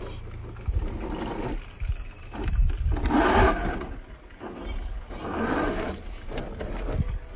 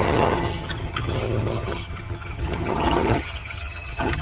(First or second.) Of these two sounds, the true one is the first